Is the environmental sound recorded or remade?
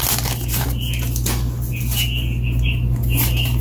recorded